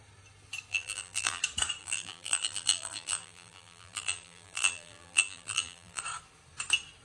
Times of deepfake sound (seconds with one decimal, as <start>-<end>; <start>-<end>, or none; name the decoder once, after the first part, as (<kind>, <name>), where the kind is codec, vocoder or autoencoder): 0.7-1.4 (vocoder, BigVGAN v2); 1.8-6.0